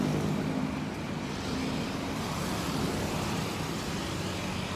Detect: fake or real real